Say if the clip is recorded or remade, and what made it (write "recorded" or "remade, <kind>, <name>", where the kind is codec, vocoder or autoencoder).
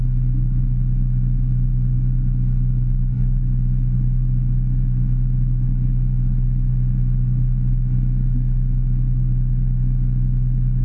remade, autoencoder, DAC-VAE